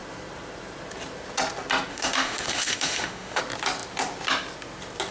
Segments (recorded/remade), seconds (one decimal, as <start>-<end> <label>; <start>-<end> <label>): 0.0-1.9 recorded; 1.9-3.4 remade; 3.4-5.1 recorded